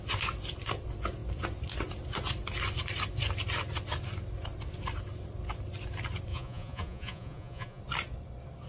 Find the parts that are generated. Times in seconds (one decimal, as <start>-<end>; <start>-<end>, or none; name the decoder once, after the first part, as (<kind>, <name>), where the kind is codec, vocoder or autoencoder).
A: 6.3-7.8 (vocoder, Vocos)